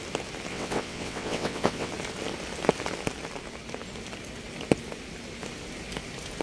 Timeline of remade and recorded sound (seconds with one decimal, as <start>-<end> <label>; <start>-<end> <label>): 0.0-0.5 recorded; 0.5-1.9 remade; 1.9-6.4 recorded